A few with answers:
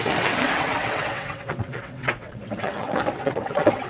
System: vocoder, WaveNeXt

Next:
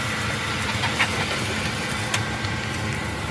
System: none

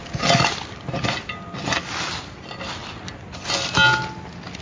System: none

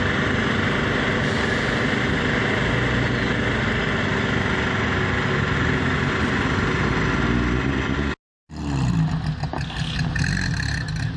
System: none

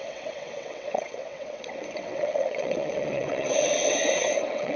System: vocoder, WaveNeXt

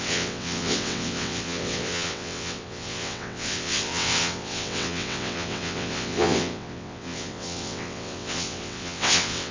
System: vocoder, WaveNeXt